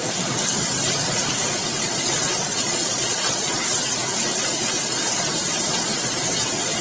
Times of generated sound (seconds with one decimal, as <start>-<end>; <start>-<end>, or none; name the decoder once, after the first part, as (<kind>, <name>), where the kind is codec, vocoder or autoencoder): 2.5-3.5 (vocoder, Vocos)